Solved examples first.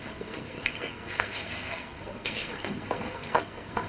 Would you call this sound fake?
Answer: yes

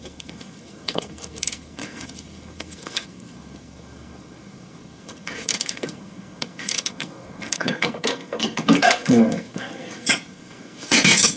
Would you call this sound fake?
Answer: yes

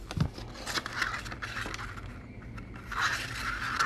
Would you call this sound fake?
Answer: no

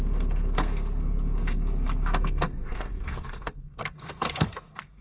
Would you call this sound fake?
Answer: yes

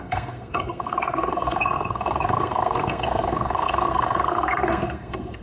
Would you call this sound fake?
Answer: yes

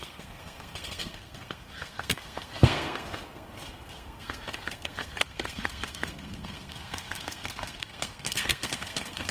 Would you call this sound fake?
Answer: yes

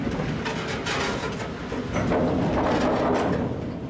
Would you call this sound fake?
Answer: no